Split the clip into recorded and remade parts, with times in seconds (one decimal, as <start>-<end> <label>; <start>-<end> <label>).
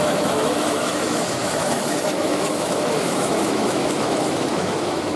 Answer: 0.0-5.2 remade